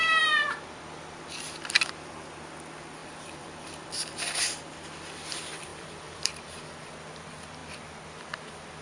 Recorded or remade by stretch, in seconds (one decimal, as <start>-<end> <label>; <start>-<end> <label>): 0.0-0.8 remade; 0.8-3.0 recorded; 3.0-3.9 remade; 3.9-5.7 recorded; 5.7-6.6 remade; 6.6-8.8 recorded

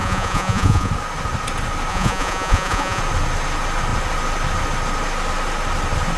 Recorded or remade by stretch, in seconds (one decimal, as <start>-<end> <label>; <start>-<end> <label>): 0.0-0.9 remade; 0.9-1.9 recorded; 1.9-3.0 remade; 3.0-6.2 recorded